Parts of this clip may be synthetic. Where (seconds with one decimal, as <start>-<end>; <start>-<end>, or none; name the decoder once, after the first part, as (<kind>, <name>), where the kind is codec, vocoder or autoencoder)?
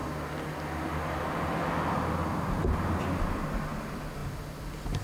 none